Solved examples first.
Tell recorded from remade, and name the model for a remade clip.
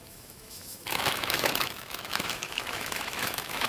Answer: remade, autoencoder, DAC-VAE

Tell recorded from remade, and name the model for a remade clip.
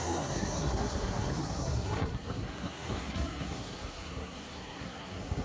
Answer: remade, codec, SNAC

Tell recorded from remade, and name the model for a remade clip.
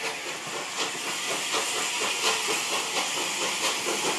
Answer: recorded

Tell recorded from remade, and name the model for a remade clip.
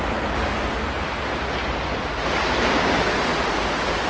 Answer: recorded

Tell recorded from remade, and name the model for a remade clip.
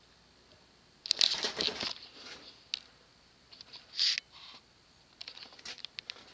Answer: recorded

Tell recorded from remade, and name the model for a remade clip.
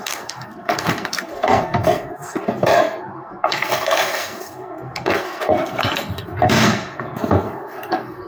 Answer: remade, codec, SNAC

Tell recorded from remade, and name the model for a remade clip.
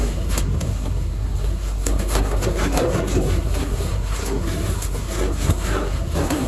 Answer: remade, codec, SNAC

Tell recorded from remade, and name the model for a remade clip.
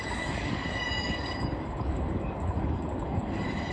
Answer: remade, codec, DAC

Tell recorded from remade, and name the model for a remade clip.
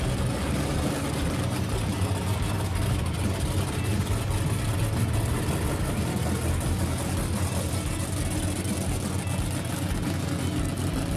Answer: recorded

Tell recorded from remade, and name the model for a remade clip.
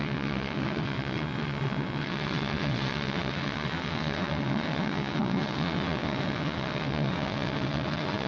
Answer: remade, vocoder, WaveNeXt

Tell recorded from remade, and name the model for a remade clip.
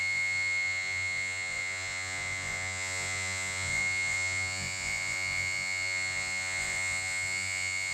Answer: remade, vocoder, Vocos